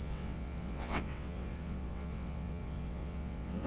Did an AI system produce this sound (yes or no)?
yes